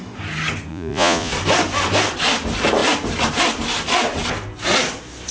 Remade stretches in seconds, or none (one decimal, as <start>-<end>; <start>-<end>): 0.7-1.3